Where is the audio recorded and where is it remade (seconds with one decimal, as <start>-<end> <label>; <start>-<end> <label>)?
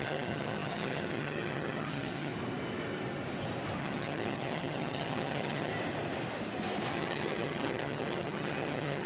0.0-2.3 remade; 2.3-3.8 recorded; 3.8-5.7 remade; 5.7-6.9 recorded; 6.9-9.1 remade